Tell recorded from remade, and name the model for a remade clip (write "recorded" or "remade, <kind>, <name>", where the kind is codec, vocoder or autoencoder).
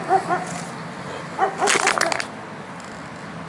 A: recorded